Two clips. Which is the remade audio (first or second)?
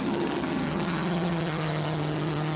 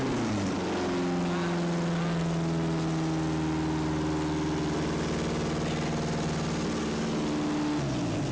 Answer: first